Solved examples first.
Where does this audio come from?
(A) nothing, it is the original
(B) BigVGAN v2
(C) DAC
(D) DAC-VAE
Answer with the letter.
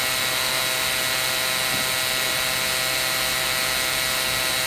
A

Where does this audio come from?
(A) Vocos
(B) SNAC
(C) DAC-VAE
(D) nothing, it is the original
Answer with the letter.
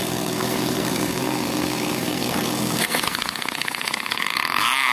B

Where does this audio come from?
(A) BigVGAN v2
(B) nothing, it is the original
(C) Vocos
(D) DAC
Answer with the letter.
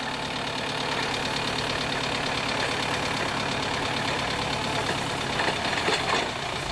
B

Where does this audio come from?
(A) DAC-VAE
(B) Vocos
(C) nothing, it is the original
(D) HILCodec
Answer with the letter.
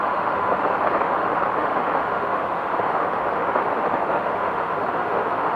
A